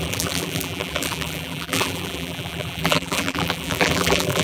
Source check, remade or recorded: remade